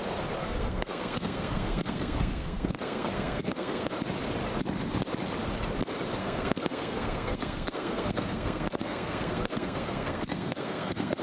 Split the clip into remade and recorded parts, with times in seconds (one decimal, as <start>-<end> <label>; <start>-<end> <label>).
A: 0.0-0.4 recorded; 0.4-3.9 remade; 3.9-6.2 recorded; 6.2-11.2 remade